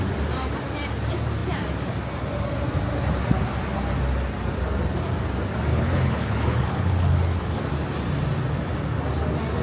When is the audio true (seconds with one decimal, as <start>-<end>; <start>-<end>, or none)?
0.0-5.7; 7.7-9.6